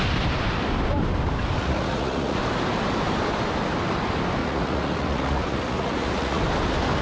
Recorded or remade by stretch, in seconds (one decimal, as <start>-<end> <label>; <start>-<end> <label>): 0.0-1.6 recorded; 1.6-2.4 remade; 2.4-4.4 recorded; 4.4-6.4 remade; 6.4-7.0 recorded